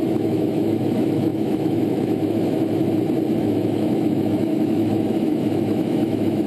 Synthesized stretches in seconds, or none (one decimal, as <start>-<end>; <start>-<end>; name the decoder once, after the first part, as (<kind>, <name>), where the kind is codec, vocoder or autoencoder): 0.0-2.8 (autoencoder, DAC-VAE); 3.4-6.5